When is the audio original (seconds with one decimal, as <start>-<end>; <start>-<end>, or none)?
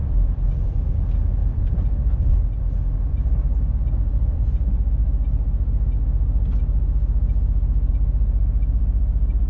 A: 0.8-1.4; 3.1-4.1; 4.6-9.5